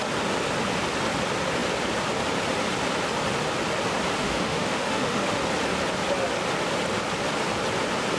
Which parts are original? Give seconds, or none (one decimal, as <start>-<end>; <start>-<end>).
0.0-4.2; 5.4-8.2